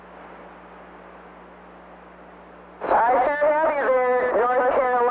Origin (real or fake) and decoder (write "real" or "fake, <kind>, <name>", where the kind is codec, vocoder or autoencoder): real